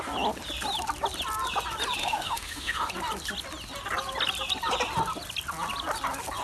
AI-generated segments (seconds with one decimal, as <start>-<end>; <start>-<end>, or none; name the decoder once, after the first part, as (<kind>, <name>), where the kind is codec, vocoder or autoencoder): 2.0-2.9 (autoencoder, DAC-VAE)